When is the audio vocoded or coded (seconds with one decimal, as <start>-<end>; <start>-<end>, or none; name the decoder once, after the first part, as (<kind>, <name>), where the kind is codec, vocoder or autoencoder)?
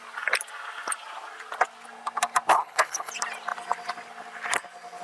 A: 2.5-3.1 (codec, HILCodec)